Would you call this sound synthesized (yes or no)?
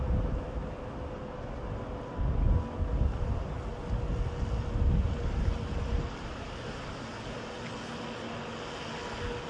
no